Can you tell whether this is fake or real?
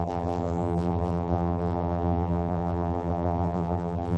fake